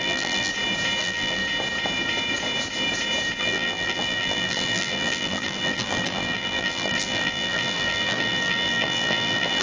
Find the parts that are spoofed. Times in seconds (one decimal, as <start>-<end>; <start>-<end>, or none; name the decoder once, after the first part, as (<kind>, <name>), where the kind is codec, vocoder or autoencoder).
0.0-0.5 (vocoder, BigVGAN v2); 1.0-1.4; 3.4-9.6